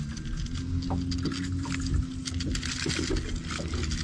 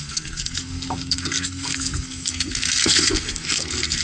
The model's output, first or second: second